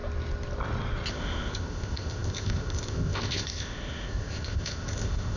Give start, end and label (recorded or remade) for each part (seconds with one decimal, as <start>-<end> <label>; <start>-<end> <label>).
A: 0.0-1.1 recorded; 1.1-5.4 remade